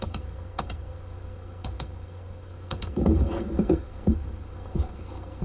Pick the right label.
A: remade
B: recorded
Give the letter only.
A